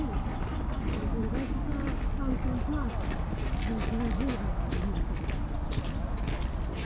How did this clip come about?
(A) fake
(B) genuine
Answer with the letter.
B